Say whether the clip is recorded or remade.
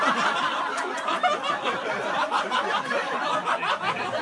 recorded